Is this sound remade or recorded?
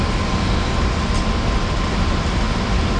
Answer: recorded